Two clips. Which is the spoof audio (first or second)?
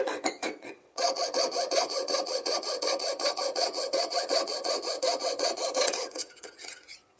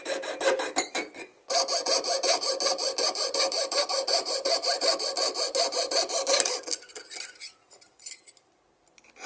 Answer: first